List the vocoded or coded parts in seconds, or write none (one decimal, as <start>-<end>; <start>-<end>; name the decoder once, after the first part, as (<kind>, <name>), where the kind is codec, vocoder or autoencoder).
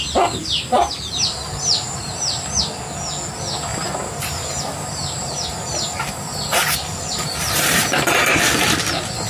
0.4-2.6 (vocoder, BigVGAN v2); 3.7-8.4